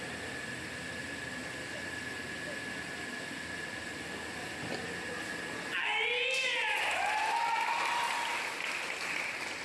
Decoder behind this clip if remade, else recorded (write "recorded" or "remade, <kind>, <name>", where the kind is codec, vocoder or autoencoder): recorded